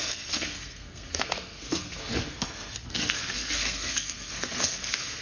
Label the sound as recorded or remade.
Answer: remade